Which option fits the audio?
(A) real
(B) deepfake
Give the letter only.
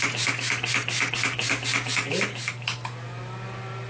A